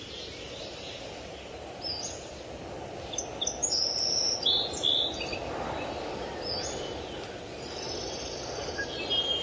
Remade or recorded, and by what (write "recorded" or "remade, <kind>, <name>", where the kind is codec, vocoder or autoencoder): recorded